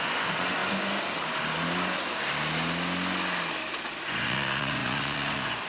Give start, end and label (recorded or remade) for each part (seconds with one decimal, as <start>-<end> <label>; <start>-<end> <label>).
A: 0.0-0.6 remade; 0.6-4.0 recorded; 4.0-5.7 remade

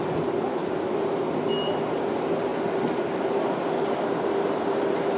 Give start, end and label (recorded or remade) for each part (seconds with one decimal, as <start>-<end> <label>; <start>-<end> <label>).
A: 0.0-5.2 recorded